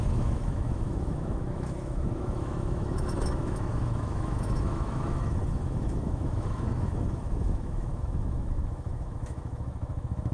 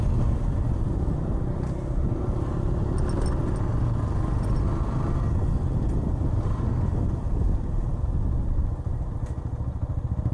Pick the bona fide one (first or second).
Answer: second